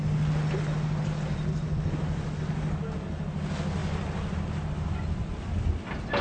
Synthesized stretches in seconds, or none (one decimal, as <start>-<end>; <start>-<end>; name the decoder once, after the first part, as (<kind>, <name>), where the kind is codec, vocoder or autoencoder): none

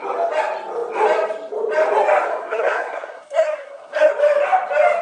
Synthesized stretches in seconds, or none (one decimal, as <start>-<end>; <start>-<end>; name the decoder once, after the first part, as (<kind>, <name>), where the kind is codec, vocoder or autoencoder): 2.3-4.1 (codec, SNAC)